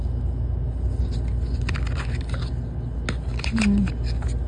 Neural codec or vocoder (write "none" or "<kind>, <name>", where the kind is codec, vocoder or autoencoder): none